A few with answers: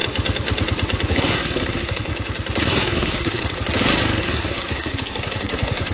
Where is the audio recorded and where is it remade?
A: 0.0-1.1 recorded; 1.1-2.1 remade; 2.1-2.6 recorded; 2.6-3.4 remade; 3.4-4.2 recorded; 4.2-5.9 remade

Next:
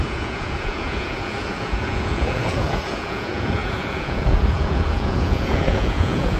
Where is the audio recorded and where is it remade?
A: 0.0-6.4 remade

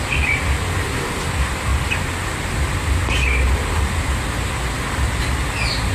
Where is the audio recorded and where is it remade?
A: 0.0-5.9 recorded